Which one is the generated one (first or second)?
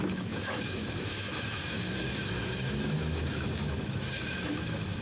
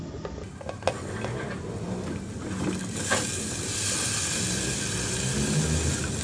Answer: first